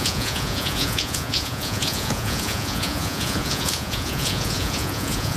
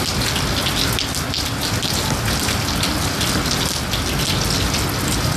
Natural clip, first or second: second